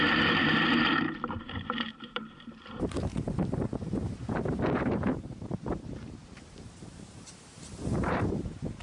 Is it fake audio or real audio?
fake